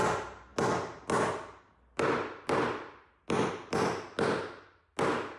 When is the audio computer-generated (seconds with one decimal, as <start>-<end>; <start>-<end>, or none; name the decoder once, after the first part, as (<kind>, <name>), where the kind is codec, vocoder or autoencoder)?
none

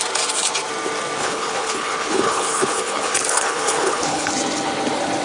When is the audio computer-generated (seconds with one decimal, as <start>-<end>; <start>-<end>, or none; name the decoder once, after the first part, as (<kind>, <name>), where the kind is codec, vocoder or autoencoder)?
1.2-4.3 (codec, HILCodec)

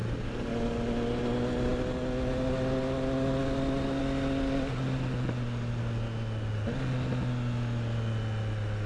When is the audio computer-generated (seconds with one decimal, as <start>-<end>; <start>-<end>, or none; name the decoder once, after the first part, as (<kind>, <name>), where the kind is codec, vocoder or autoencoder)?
none

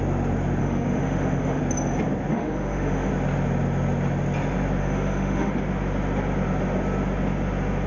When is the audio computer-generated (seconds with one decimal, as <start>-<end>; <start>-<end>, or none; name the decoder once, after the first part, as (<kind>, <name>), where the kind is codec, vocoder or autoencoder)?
0.6-1.6 (autoencoder, DAC-VAE); 2.3-3.1; 4.8-5.5

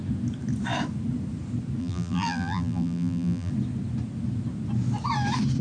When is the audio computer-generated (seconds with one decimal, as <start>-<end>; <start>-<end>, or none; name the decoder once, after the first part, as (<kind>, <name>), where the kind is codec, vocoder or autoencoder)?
1.8-3.5 (vocoder, BigVGAN v2)

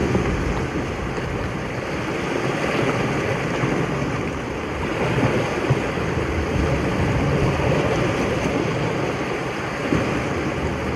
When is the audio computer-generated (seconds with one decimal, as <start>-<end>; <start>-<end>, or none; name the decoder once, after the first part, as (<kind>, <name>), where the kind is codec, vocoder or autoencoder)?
none

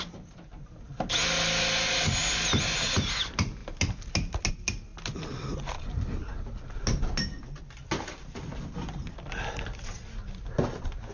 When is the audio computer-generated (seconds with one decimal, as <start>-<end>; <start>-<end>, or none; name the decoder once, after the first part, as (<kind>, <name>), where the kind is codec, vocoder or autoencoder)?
none

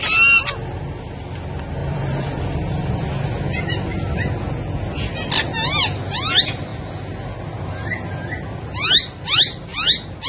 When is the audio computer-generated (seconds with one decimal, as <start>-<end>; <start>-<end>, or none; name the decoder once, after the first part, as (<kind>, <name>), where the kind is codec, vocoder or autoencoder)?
1.8-2.9 (vocoder, BigVGAN v2)